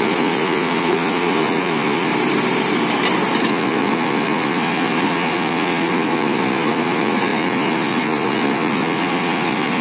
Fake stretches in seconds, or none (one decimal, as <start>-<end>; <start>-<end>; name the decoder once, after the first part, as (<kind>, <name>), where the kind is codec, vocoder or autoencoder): 0.0-2.1 (vocoder, Vocos); 3.5-9.8